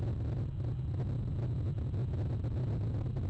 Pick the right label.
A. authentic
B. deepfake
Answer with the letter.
A